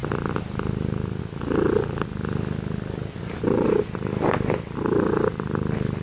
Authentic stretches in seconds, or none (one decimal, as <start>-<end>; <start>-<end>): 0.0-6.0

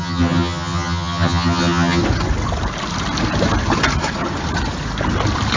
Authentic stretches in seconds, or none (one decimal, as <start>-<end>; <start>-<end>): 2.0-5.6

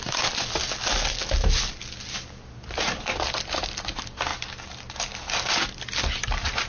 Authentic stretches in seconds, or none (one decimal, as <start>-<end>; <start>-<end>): 0.0-6.7

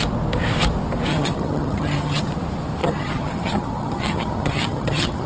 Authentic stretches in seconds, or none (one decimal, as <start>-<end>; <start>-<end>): 0.0-1.1; 2.3-2.8

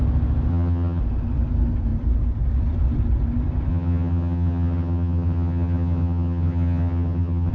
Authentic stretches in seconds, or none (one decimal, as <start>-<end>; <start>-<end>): 0.0-0.5; 1.0-3.7

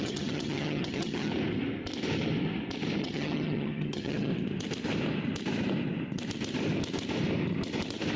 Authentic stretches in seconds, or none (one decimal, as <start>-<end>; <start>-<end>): 1.3-3.0; 4.3-8.2